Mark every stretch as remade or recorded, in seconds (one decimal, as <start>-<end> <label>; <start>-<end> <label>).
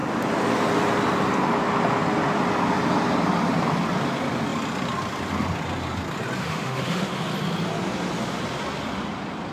0.0-6.4 recorded; 6.4-7.2 remade; 7.2-9.5 recorded